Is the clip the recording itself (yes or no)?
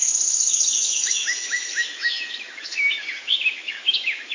no